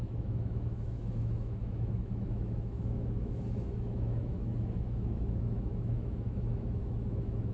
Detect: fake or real fake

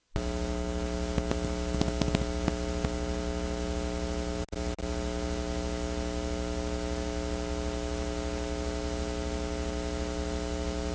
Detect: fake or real real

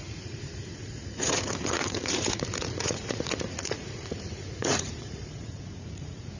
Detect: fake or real fake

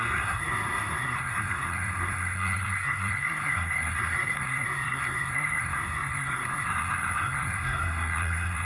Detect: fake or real fake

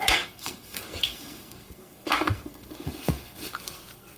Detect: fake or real fake